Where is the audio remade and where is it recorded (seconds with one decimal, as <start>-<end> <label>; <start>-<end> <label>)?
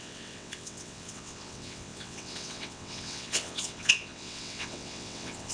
0.0-5.5 remade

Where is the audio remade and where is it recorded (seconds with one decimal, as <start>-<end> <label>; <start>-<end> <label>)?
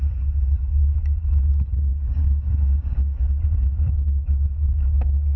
0.0-0.9 recorded; 0.9-1.5 remade; 1.5-1.9 recorded; 1.9-5.4 remade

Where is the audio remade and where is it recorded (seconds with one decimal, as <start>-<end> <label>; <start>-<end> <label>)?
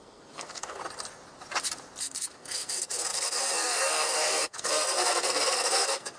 0.0-0.8 remade; 0.8-2.0 recorded; 2.0-6.2 remade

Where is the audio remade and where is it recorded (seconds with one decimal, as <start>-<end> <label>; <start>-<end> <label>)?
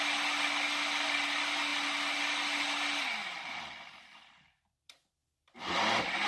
0.0-5.2 recorded; 5.2-5.7 remade; 5.7-6.3 recorded